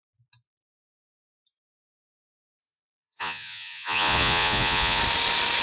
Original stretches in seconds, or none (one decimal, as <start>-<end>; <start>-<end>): 0.0-1.6; 5.0-5.6